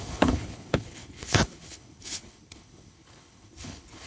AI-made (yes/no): yes